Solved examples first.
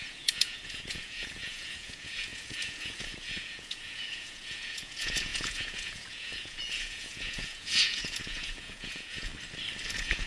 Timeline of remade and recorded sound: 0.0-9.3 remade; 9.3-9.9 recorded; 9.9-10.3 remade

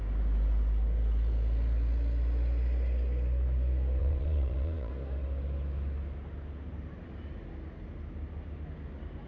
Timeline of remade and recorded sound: 0.0-4.0 recorded; 4.0-4.9 remade; 4.9-9.3 recorded

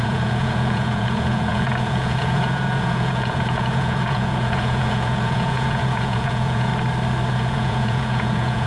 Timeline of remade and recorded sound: 0.0-6.7 remade; 6.7-7.3 recorded; 7.3-8.7 remade

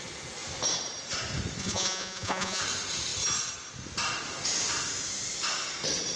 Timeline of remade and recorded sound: 0.0-1.6 recorded; 1.6-2.6 remade; 2.6-6.2 recorded

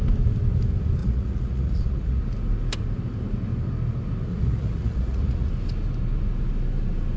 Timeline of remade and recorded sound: 0.0-1.0 recorded; 1.0-2.2 remade; 2.2-4.3 recorded; 4.3-5.5 remade; 5.5-7.2 recorded

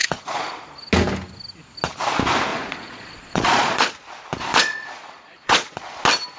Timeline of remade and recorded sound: 0.0-0.6 remade; 0.6-2.5 recorded; 2.5-4.0 remade; 4.0-4.5 recorded; 4.5-6.0 remade; 6.0-6.4 recorded